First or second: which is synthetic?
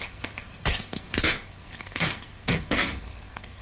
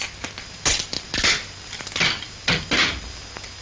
first